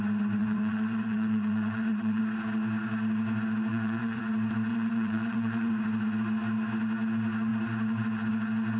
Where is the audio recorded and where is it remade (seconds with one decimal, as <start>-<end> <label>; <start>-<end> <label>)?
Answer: 0.0-0.4 recorded; 0.4-2.2 remade; 2.2-3.7 recorded; 3.7-4.2 remade; 4.2-4.7 recorded; 4.7-5.7 remade; 5.7-8.8 recorded